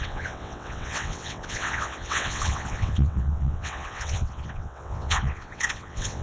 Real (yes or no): no